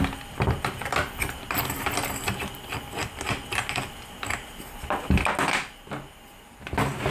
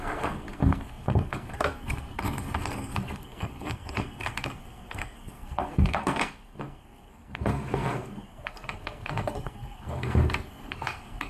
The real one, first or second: first